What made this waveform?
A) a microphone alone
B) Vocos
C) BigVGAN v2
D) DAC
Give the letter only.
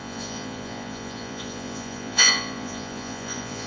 B